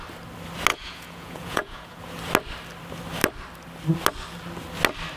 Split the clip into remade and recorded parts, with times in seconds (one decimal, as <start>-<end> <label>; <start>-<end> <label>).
0.0-0.7 recorded; 0.7-2.0 remade; 2.0-5.2 recorded